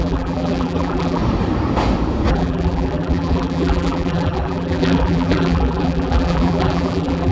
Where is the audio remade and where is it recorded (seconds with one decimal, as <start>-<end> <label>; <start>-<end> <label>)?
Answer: 0.0-1.2 remade; 1.2-2.3 recorded; 2.3-7.3 remade